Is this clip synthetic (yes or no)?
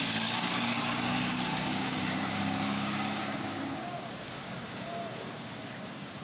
yes